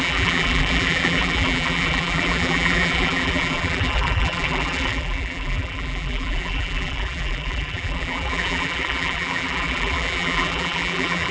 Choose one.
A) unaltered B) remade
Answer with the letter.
B